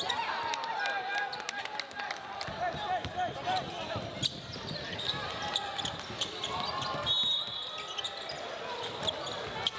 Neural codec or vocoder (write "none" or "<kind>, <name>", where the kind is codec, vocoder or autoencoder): none